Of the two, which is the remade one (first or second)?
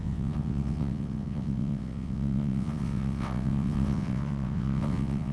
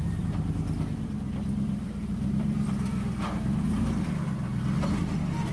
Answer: first